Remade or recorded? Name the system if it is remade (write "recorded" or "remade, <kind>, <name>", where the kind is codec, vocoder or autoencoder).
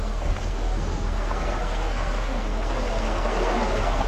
remade, codec, SNAC